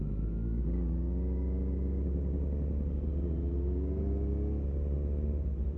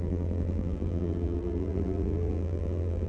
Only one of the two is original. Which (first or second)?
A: first